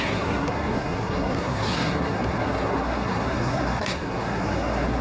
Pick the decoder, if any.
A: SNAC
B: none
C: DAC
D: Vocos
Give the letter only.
A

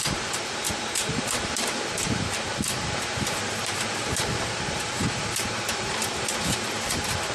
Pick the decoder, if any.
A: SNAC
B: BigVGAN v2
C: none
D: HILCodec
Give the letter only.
B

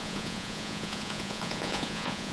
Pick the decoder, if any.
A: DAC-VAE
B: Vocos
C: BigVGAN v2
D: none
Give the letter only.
B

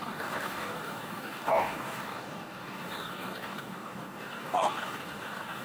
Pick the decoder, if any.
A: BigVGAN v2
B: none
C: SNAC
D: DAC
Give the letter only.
D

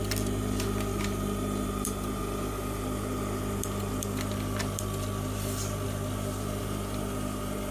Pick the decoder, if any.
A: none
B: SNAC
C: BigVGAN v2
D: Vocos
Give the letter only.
A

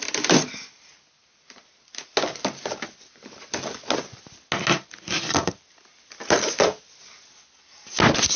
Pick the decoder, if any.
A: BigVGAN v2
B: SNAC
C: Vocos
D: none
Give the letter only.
D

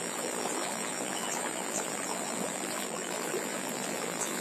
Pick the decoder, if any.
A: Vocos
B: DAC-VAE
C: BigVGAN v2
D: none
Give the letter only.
C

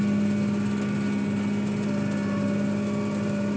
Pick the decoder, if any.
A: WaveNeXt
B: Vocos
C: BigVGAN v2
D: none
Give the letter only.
D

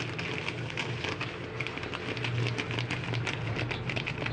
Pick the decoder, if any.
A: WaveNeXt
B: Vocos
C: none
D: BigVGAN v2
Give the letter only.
C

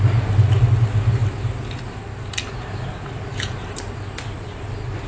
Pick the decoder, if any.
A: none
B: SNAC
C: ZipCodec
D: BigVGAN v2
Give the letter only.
A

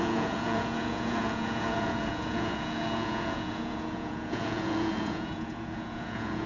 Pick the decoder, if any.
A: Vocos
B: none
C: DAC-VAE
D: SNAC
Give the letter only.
A